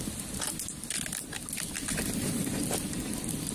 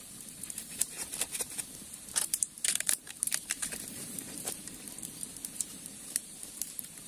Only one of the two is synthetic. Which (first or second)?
second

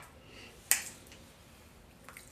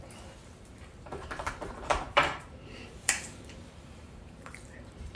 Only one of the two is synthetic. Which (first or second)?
second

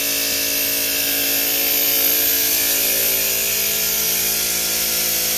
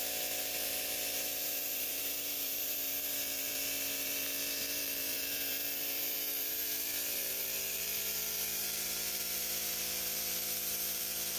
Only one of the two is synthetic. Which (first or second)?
second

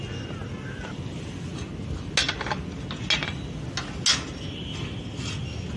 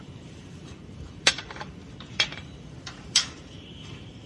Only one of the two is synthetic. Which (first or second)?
second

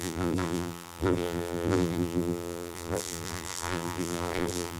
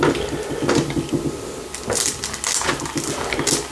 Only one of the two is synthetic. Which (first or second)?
first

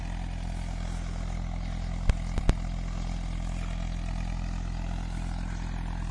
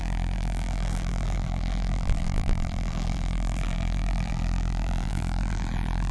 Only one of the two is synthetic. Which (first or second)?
second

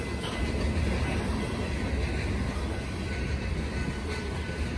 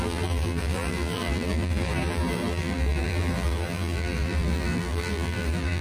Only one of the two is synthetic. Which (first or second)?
second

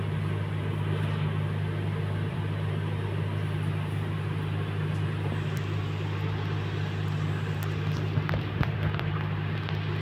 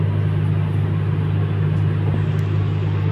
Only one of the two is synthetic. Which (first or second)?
first